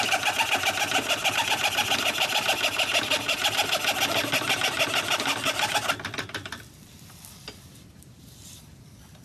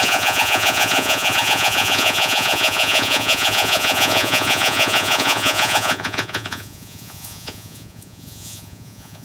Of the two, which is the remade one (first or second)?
second